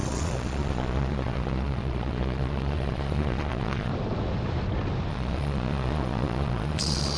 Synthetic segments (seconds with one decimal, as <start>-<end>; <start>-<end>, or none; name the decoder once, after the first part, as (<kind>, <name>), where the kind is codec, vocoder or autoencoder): 0.0-3.9 (vocoder, Vocos); 5.1-7.2